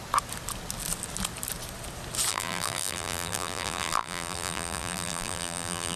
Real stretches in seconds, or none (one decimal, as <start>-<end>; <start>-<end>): 0.0-2.3